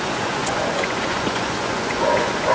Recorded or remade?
remade